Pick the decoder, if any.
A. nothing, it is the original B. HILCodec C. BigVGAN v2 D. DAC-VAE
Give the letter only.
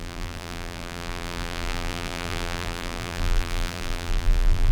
C